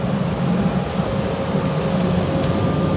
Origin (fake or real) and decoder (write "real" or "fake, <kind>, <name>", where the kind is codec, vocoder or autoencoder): real